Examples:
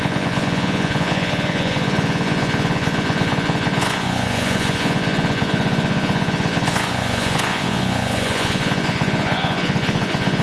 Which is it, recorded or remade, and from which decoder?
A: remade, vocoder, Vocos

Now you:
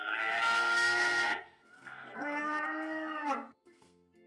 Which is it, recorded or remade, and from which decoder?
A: remade, codec, SNAC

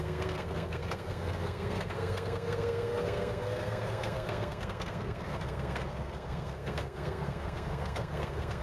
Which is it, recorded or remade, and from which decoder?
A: remade, codec, SNAC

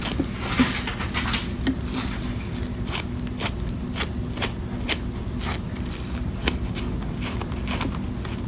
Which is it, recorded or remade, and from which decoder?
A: recorded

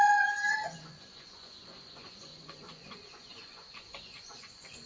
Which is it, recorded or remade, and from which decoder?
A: remade, vocoder, Vocos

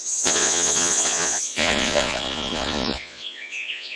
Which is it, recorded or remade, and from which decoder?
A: remade, vocoder, Vocos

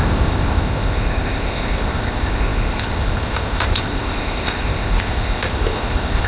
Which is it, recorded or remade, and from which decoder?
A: remade, codec, ZipCodec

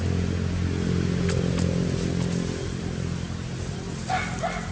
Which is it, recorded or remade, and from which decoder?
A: recorded